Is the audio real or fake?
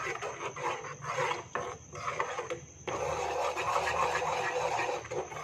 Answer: real